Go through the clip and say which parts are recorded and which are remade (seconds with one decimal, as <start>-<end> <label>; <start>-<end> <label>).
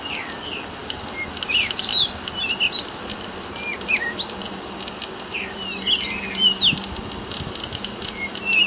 0.0-8.7 recorded